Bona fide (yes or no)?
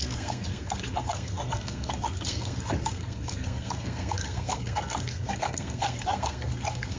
no